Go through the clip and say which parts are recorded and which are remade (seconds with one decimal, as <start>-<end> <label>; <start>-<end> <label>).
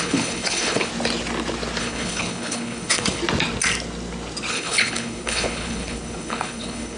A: 0.0-0.9 remade; 0.9-1.8 recorded; 1.8-3.2 remade; 3.2-4.5 recorded; 4.5-7.0 remade